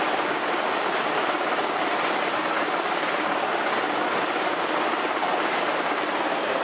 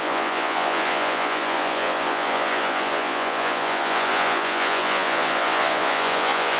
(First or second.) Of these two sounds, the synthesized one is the second